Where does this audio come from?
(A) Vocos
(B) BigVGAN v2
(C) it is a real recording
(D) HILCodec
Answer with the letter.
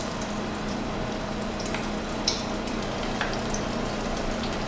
B